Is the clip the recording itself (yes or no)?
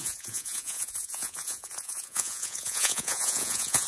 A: no